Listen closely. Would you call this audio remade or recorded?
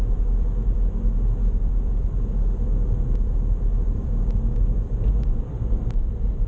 remade